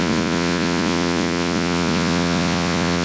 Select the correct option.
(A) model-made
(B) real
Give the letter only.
A